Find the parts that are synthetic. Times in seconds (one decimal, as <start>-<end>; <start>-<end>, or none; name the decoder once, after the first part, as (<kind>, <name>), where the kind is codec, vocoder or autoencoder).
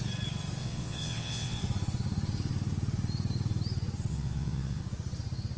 0.6-1.6 (vocoder, WaveNeXt); 4.1-4.8